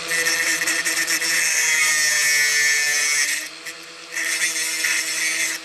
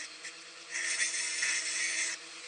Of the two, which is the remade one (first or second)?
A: second